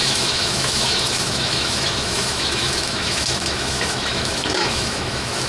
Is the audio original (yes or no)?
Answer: no